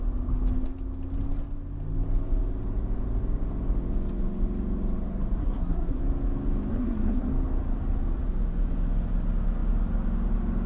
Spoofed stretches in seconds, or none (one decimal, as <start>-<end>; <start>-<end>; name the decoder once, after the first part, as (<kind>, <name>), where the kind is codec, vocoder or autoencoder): 5.4-6.0 (codec, SNAC); 6.7-7.3

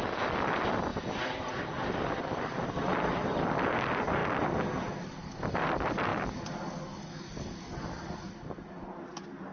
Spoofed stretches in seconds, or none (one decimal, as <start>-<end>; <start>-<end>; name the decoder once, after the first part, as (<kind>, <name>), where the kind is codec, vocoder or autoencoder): none

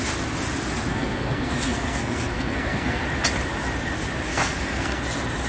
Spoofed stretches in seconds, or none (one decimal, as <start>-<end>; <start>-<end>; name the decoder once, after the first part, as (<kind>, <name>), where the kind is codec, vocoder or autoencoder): 0.9-3.0 (codec, SNAC); 4.3-5.0

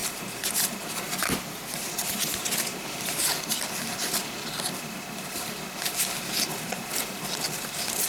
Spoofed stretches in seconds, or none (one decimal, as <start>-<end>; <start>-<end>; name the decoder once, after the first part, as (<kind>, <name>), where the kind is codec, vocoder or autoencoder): none

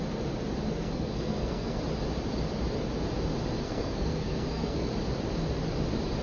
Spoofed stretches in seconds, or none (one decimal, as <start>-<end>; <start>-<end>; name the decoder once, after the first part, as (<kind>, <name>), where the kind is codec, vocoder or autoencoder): 0.7-1.8 (codec, SNAC); 3.6-4.9